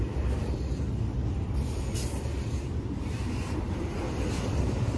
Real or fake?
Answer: fake